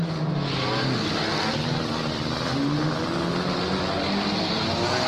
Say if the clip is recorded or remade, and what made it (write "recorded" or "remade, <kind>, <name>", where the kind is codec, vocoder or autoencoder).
recorded